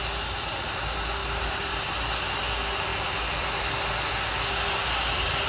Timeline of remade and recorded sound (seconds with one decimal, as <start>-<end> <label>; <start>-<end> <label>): 0.0-1.2 recorded; 1.2-2.2 remade; 2.2-2.9 recorded; 2.9-3.7 remade; 3.7-5.5 recorded